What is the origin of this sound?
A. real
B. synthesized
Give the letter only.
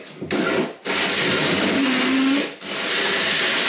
A